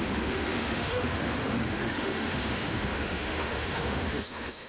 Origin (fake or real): fake